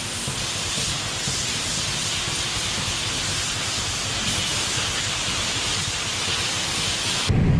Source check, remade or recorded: recorded